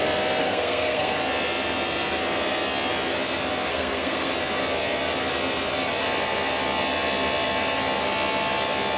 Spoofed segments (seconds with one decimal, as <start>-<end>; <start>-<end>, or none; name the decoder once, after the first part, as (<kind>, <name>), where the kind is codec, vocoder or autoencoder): 0.4-1.2 (codec, SNAC); 3.7-4.3